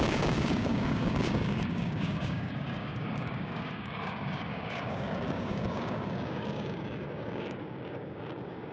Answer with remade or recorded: remade